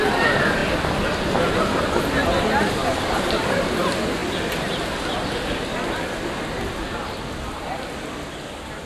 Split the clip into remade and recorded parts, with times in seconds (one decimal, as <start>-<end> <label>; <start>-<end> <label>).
0.0-8.9 recorded